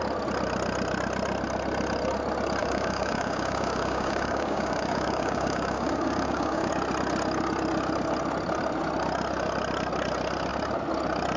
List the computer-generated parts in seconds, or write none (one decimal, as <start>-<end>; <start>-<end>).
2.6-6.7